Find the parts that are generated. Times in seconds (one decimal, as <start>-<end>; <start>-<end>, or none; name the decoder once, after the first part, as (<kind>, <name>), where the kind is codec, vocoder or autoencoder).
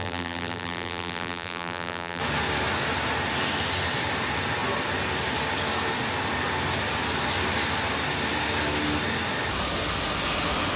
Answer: 0.0-2.2 (vocoder, BigVGAN v2)